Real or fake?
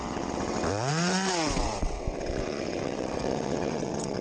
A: fake